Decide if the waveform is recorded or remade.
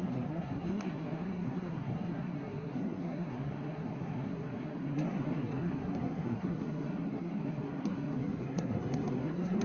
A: remade